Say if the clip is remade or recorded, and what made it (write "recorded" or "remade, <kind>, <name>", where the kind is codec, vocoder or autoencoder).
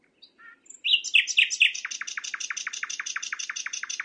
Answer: recorded